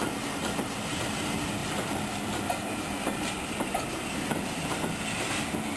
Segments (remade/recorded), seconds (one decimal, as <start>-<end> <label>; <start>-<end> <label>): 0.0-5.8 recorded